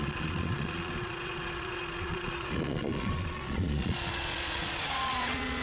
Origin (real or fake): fake